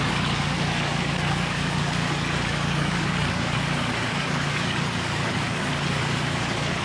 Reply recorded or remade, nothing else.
remade